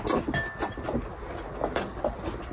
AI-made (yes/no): no